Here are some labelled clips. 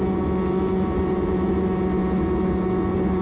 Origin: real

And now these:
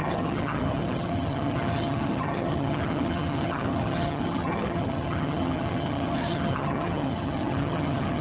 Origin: fake